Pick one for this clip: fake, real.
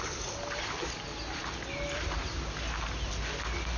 real